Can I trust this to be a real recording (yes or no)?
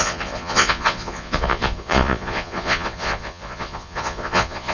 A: no